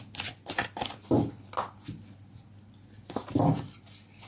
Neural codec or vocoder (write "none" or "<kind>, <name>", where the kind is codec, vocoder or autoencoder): none